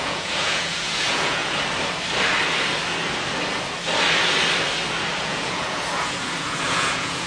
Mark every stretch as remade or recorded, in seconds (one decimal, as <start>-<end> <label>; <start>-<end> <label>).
0.0-1.4 remade; 1.4-5.2 recorded; 5.2-7.3 remade